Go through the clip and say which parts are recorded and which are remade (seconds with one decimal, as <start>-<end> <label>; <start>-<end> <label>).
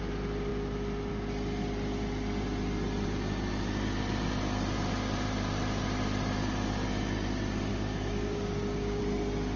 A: 0.0-7.7 recorded; 7.7-9.0 remade; 9.0-9.6 recorded